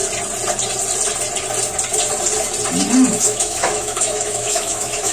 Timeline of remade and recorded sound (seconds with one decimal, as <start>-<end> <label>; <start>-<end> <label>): 0.0-3.1 recorded; 3.1-5.1 remade

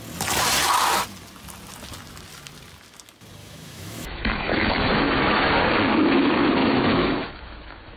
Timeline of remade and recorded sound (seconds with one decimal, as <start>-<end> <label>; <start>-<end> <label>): 0.0-3.4 recorded; 3.4-5.5 remade; 5.5-6.6 recorded; 6.6-8.0 remade

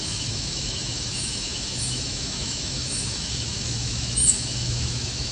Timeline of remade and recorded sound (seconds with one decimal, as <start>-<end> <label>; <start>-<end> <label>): 0.0-5.3 remade

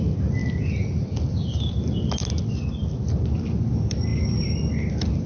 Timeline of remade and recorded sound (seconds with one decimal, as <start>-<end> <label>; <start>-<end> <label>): 0.0-5.3 recorded

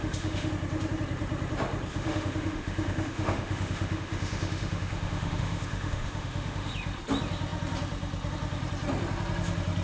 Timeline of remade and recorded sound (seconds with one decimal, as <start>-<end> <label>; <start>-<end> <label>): 0.0-0.5 remade; 0.5-1.9 recorded; 1.9-6.7 remade; 6.7-9.8 recorded

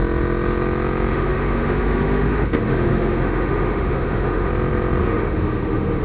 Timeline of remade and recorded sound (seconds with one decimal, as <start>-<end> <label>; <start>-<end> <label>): 0.0-1.1 recorded; 1.1-4.5 remade; 4.5-5.0 recorded; 5.0-6.0 remade

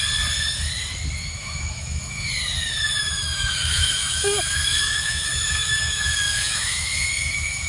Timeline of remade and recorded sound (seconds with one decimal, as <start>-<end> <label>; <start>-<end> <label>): 0.0-1.2 recorded; 1.2-2.3 remade; 2.3-3.0 recorded; 3.0-7.7 remade